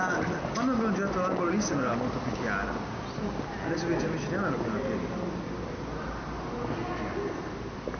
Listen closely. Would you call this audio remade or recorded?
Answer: recorded